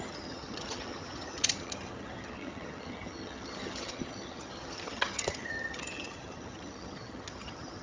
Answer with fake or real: fake